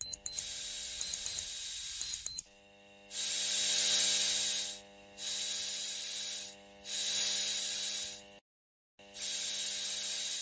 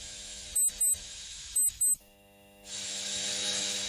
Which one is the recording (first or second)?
first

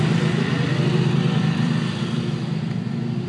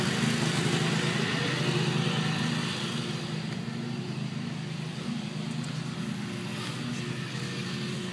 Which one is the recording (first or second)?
second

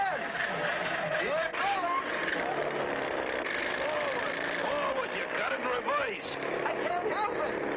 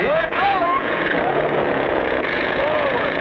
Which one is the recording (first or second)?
first